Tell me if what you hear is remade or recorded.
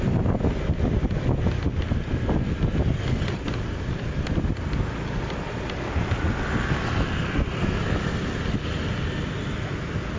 recorded